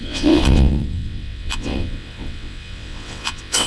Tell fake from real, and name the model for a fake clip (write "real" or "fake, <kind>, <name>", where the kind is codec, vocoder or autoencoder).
fake, vocoder, WaveNeXt